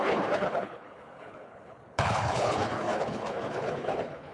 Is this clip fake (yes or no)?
yes